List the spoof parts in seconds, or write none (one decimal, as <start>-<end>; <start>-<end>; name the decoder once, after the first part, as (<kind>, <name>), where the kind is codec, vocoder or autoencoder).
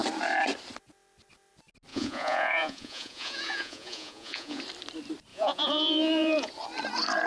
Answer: 1.9-4.6 (vocoder, Vocos); 5.3-6.5